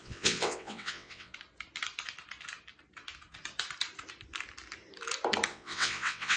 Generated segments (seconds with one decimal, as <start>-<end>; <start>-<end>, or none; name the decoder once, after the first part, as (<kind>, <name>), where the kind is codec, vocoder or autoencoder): 0.0-1.3 (vocoder, WaveNeXt); 5.5-6.4